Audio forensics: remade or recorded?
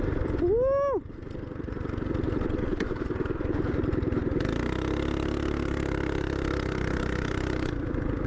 recorded